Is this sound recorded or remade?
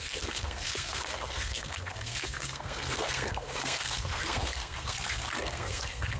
remade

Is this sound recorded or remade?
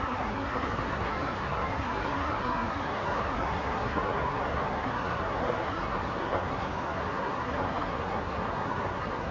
remade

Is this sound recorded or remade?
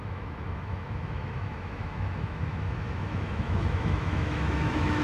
remade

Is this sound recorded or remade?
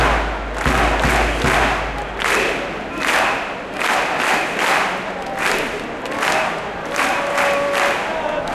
recorded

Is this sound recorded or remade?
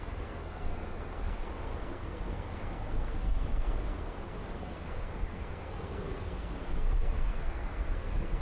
remade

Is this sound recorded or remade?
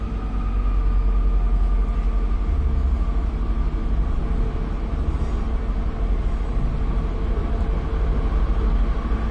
recorded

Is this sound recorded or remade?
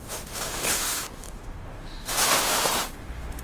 remade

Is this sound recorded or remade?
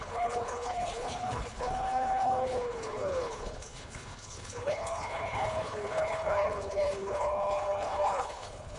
remade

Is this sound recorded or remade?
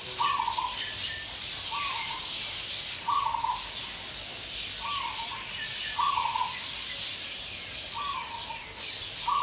recorded